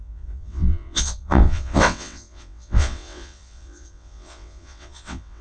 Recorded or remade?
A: remade